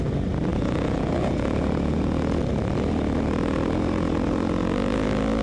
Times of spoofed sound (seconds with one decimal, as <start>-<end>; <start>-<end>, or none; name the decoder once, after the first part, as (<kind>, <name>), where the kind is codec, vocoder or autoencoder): 0.5-2.4 (vocoder, Vocos)